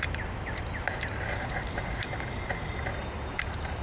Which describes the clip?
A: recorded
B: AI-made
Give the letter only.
A